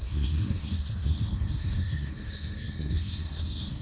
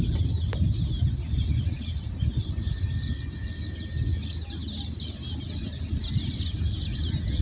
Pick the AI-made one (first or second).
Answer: first